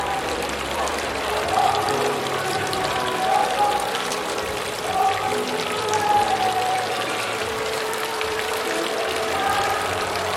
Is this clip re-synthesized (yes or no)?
yes